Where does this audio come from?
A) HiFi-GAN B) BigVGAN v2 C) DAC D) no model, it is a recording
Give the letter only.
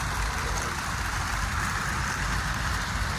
B